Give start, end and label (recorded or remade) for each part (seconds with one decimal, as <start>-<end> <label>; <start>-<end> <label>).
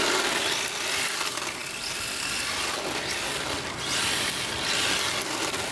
0.0-5.7 recorded